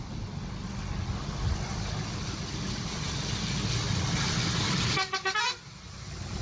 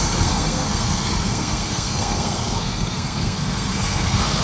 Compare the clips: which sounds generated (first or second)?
second